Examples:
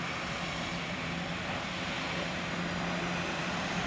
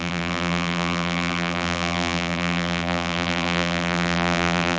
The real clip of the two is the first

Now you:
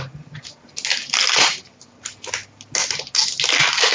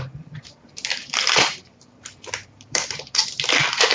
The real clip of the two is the first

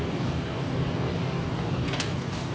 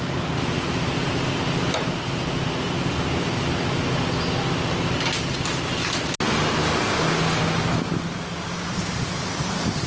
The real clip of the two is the second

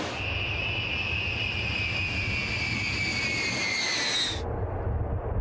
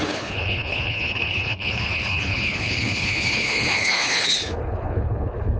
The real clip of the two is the first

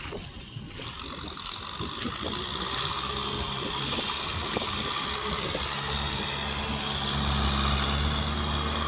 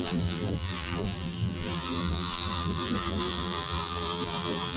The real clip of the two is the first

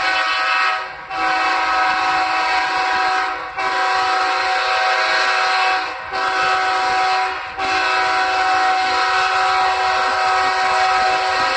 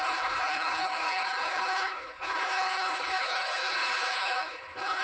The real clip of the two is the first